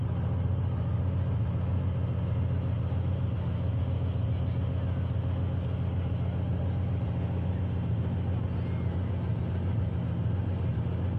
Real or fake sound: real